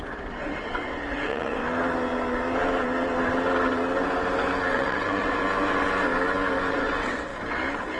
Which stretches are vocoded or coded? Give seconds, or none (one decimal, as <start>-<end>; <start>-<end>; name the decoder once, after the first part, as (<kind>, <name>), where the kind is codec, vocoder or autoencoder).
0.0-1.6 (vocoder, WaveNeXt); 4.7-5.4; 6.7-7.3